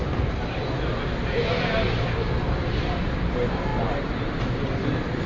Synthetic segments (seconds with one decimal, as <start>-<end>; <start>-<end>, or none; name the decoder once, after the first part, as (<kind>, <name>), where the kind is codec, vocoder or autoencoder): none